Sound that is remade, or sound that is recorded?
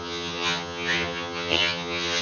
remade